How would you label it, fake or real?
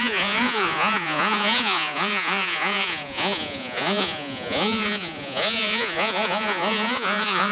fake